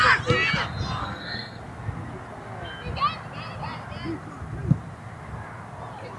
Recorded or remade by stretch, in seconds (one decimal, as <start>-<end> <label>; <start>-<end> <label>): 0.0-1.0 recorded; 1.0-1.6 remade; 1.6-6.2 recorded